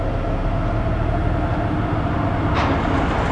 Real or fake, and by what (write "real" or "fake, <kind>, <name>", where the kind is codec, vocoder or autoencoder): real